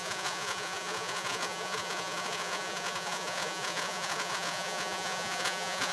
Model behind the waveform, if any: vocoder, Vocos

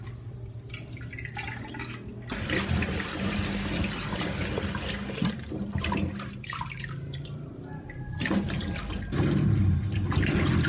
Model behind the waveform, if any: none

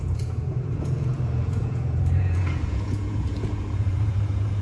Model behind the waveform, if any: vocoder, Vocos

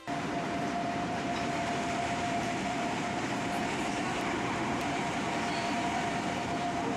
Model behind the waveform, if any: vocoder, BigVGAN v2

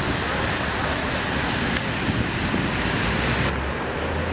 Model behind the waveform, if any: none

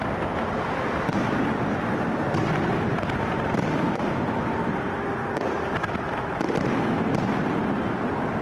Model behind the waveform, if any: vocoder, BigVGAN v2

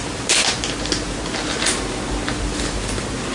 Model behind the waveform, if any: none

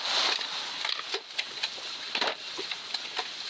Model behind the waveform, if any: none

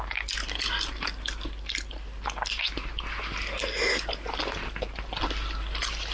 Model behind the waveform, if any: none